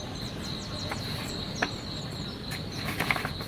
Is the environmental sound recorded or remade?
recorded